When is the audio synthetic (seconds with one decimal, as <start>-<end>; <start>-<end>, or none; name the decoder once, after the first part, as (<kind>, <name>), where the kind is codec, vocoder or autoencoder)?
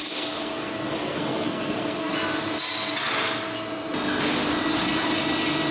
0.0-2.1 (codec, SNAC)